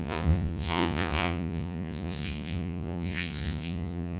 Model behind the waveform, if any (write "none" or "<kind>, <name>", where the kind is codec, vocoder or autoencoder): vocoder, Vocos